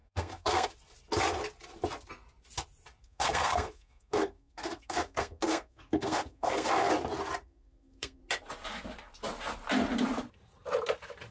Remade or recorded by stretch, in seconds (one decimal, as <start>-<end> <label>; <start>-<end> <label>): 0.0-0.7 remade; 0.7-3.0 recorded; 3.0-6.9 remade; 6.9-7.4 recorded; 7.4-8.2 remade; 8.2-11.3 recorded